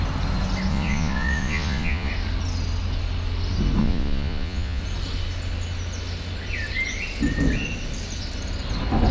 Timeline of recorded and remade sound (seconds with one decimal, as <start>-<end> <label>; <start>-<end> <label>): 0.0-0.7 recorded; 0.7-2.1 remade; 2.1-3.8 recorded; 3.8-4.8 remade; 4.8-9.1 recorded